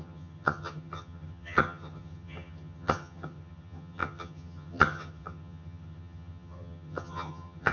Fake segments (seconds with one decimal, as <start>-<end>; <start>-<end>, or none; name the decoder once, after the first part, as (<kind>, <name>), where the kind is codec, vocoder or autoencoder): 0.0-7.7 (vocoder, HiFi-GAN)

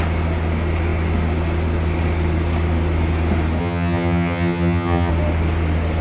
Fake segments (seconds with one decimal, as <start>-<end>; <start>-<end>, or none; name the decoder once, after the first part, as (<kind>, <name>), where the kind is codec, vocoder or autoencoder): 3.6-5.1 (vocoder, HiFi-GAN)

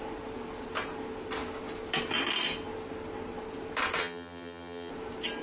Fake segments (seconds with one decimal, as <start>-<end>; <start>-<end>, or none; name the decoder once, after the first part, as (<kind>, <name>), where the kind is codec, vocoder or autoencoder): 4.0-4.9 (vocoder, HiFi-GAN)

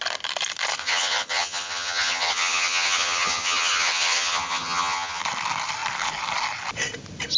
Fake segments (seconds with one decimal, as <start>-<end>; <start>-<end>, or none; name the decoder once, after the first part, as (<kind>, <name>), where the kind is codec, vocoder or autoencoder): 0.8-5.2 (vocoder, HiFi-GAN)

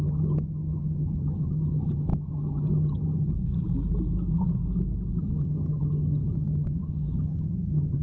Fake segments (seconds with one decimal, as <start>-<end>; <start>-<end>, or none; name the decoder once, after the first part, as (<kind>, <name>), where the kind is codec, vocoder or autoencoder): 0.0-3.3 (vocoder, HiFi-GAN); 5.2-8.0

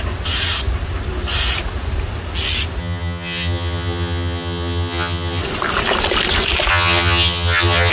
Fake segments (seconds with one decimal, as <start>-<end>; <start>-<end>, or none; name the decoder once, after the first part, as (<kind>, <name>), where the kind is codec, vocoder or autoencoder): 2.8-5.4 (vocoder, HiFi-GAN); 6.7-7.9

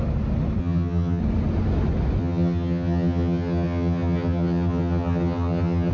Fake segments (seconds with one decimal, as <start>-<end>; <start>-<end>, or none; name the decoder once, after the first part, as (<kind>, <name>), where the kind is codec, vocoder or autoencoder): 0.6-1.2 (vocoder, HiFi-GAN); 2.2-5.9

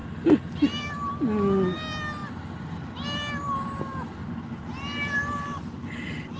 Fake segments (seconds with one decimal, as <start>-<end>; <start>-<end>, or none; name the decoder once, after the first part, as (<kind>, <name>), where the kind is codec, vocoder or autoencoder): none